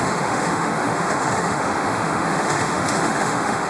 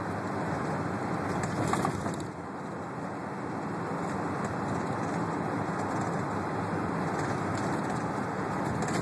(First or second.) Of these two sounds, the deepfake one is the first